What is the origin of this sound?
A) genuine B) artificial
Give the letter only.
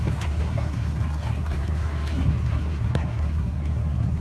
B